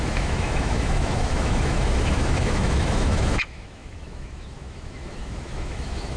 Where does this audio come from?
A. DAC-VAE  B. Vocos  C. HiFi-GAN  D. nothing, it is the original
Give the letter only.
A